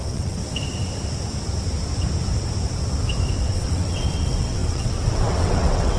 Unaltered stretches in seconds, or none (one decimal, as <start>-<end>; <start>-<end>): 0.4-3.4